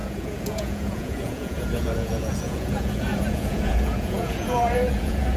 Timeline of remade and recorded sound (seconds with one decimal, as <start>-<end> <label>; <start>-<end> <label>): 0.0-5.4 remade